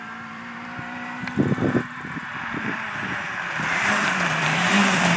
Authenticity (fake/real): fake